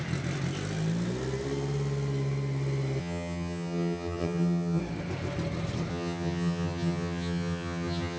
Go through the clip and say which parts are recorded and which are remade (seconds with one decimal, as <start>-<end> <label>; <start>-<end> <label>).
0.0-3.0 recorded; 3.0-4.8 remade; 4.8-5.9 recorded; 5.9-8.2 remade